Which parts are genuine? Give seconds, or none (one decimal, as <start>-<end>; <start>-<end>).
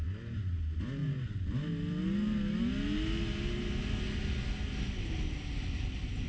0.0-6.3